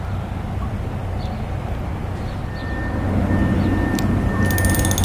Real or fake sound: real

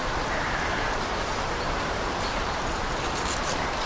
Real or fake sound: fake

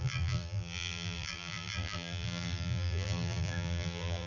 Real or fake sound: fake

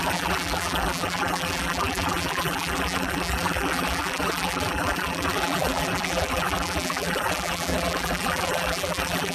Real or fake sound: fake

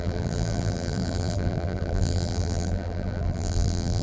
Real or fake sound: fake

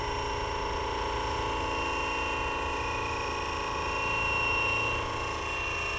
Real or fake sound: real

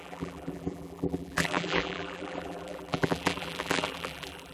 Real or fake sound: fake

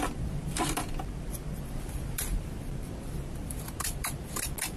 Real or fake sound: fake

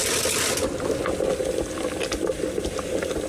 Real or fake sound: real